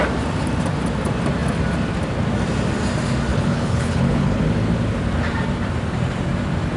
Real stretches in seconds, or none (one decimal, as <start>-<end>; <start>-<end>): 0.0-3.3; 4.4-6.8